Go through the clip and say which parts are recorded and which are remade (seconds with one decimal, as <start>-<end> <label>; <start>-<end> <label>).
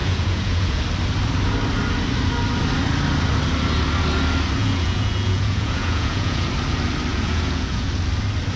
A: 0.0-0.8 remade; 0.8-4.6 recorded; 4.6-6.5 remade; 6.5-7.1 recorded; 7.1-7.9 remade; 7.9-8.6 recorded